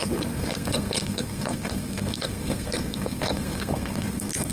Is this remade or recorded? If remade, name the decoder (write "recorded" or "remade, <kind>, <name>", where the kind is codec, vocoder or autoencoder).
remade, codec, SNAC